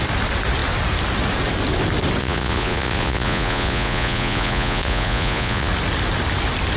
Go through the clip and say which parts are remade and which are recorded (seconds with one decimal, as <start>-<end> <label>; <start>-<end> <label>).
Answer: 0.0-2.2 recorded; 2.2-5.7 remade; 5.7-6.8 recorded